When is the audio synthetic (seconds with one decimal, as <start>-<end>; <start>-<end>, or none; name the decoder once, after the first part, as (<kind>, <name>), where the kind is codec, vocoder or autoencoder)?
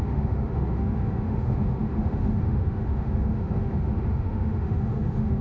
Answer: 0.0-5.4 (autoencoder, DAC-VAE)